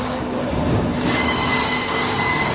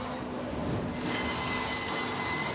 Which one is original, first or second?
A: second